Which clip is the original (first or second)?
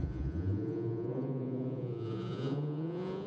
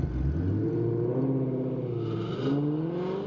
second